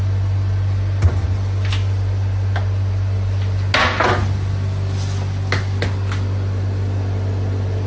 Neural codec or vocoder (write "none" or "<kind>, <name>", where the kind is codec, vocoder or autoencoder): none